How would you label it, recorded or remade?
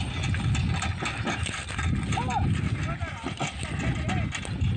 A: recorded